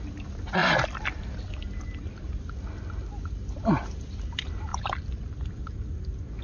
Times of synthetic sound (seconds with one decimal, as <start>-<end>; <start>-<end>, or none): 0.6-2.4; 4.7-5.6